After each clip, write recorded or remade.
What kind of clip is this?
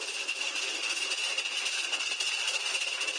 recorded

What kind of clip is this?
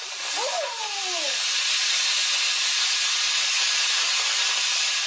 recorded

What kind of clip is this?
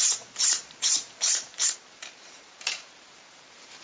remade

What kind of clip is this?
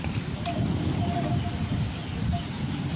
remade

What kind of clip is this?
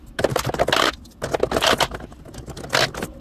recorded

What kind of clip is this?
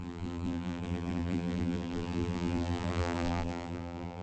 remade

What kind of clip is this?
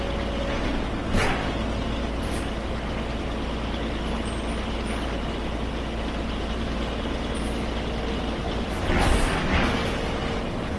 recorded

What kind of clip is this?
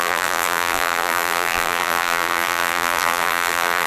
remade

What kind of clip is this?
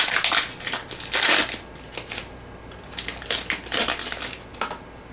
recorded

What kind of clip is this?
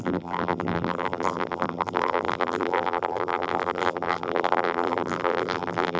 remade